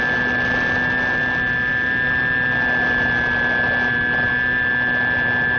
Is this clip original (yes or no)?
yes